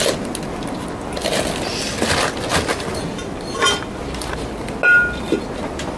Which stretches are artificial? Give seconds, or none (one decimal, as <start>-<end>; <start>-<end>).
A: none